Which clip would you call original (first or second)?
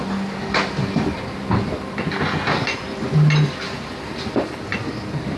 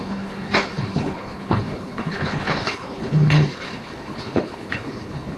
first